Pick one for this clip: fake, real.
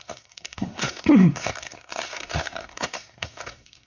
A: fake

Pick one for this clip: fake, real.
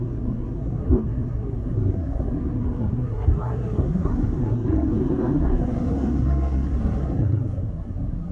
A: fake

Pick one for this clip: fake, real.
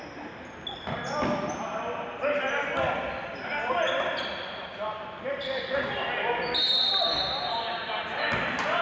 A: real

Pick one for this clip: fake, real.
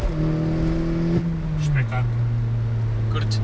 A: real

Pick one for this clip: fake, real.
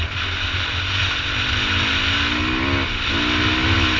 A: real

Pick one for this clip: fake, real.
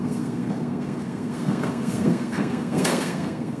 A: fake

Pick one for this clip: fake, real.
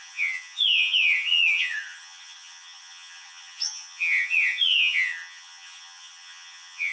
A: fake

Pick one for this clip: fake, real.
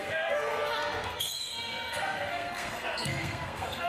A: fake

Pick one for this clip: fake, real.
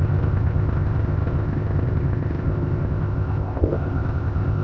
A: fake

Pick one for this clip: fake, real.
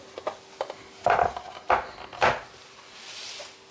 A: real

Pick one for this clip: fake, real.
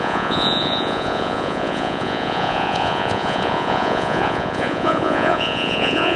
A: fake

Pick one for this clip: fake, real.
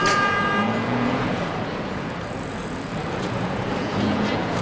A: fake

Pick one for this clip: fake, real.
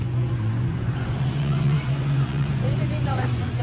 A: fake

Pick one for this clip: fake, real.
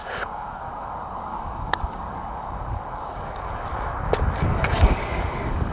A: fake